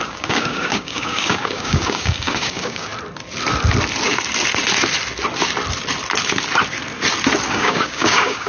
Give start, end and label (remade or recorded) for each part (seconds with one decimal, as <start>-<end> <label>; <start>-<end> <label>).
0.0-2.9 remade; 2.9-7.5 recorded; 7.5-8.5 remade